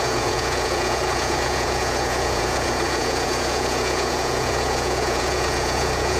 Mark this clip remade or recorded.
remade